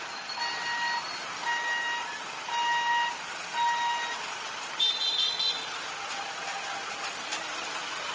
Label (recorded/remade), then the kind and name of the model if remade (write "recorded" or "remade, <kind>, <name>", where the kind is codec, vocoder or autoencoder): recorded